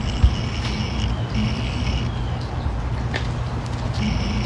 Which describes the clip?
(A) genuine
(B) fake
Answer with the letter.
A